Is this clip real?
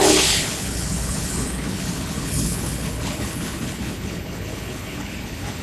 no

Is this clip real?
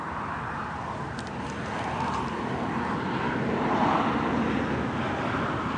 yes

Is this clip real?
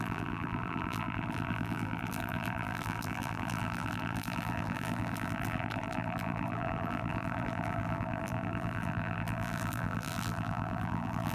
no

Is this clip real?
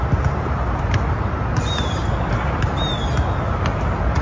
yes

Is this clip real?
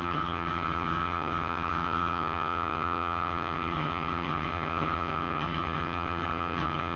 no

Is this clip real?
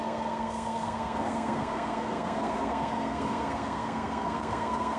no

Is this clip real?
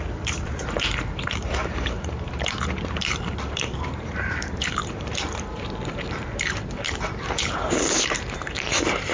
no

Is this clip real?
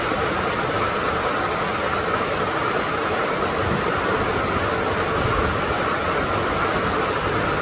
yes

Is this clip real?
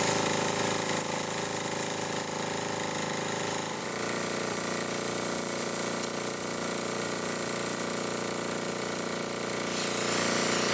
yes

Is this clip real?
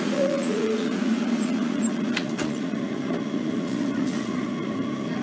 no